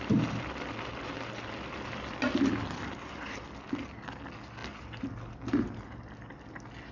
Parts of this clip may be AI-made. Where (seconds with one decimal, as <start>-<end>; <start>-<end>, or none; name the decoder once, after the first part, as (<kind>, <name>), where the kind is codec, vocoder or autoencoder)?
none